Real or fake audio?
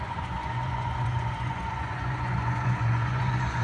fake